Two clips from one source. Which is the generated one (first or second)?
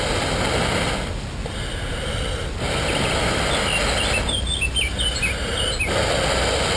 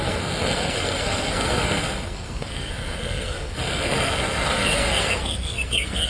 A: second